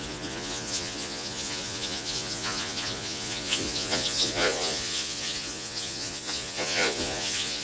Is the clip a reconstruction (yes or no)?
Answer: yes